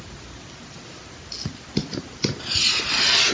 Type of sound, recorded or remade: recorded